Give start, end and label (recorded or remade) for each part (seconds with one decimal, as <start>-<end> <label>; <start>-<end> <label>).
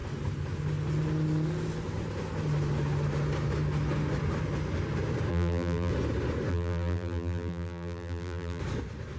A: 0.0-5.3 recorded; 5.3-5.9 remade; 5.9-6.5 recorded; 6.5-8.6 remade; 8.6-9.2 recorded